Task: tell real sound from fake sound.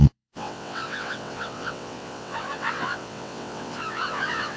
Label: fake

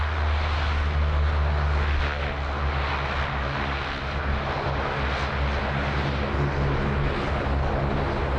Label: real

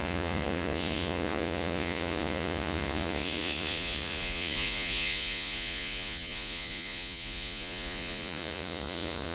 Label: fake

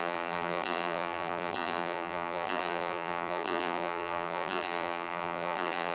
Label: fake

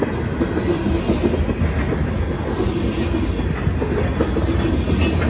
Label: real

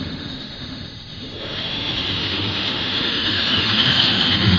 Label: fake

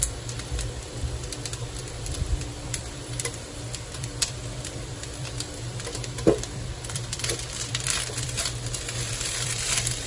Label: fake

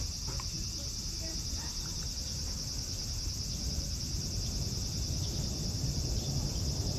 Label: fake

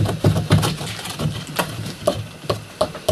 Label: real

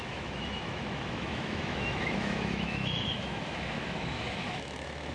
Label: fake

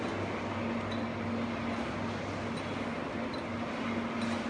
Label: real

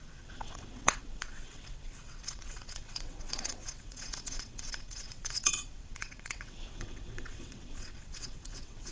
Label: fake